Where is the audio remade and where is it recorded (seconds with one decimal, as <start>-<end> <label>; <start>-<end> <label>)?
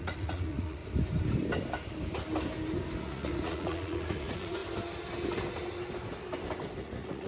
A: 0.0-0.8 remade; 0.8-3.0 recorded; 3.0-4.6 remade; 4.6-6.8 recorded; 6.8-7.3 remade